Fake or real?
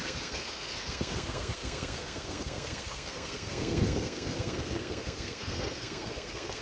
fake